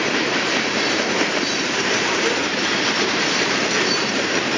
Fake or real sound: fake